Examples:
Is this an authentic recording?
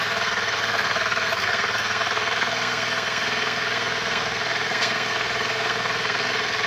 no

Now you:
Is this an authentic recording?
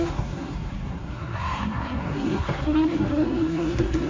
no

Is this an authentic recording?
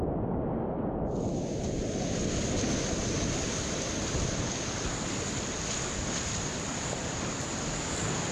yes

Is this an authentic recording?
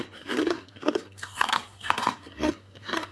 no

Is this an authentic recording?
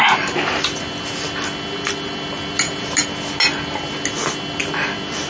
yes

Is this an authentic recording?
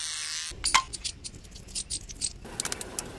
yes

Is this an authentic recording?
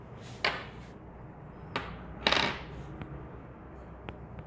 yes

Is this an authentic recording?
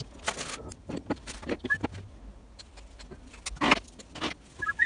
yes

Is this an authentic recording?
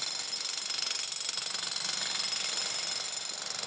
yes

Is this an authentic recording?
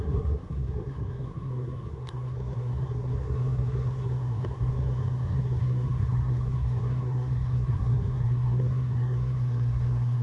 no